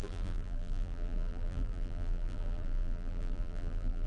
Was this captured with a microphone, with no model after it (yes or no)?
no